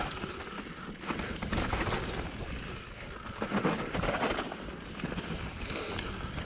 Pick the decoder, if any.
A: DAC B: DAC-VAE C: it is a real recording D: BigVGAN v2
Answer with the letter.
D